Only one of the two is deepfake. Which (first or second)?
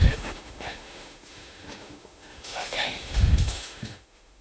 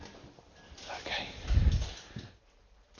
first